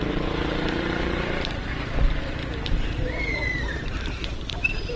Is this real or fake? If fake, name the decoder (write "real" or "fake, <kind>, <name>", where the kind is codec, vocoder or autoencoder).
fake, vocoder, BigVGAN v2